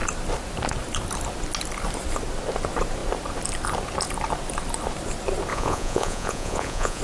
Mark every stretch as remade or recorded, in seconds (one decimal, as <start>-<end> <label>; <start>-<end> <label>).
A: 0.0-5.5 recorded; 5.5-7.0 remade